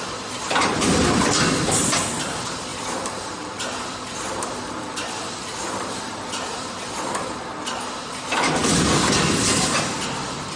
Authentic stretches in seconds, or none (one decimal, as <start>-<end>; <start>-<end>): 0.0-2.7; 6.7-10.6